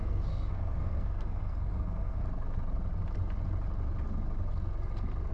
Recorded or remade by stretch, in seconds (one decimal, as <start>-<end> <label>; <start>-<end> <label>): 0.0-2.2 remade; 2.2-5.3 recorded